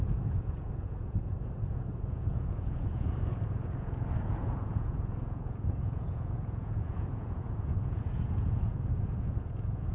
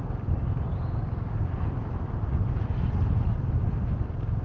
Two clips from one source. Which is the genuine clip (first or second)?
second